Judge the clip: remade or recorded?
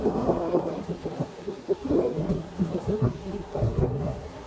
remade